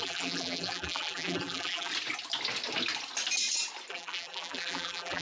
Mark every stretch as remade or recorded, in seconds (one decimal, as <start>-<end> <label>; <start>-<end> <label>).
0.0-1.9 remade; 1.9-3.9 recorded; 3.9-5.2 remade